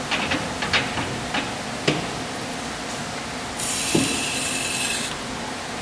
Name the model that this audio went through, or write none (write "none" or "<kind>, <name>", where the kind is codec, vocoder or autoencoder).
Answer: none